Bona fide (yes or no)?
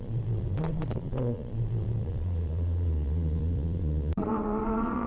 no